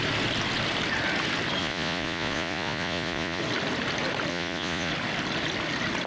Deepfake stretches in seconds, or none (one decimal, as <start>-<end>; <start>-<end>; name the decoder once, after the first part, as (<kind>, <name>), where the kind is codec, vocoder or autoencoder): 1.6-3.4 (vocoder, Vocos); 4.3-4.9